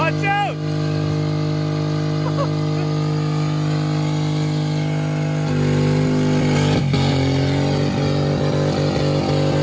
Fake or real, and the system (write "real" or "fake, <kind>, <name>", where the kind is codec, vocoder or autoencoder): real